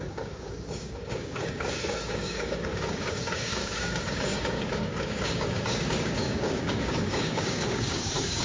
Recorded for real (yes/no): no